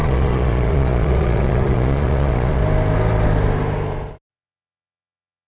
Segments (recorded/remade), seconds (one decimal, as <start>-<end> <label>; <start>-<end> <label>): 0.0-2.6 remade; 2.6-4.3 recorded; 4.3-5.5 remade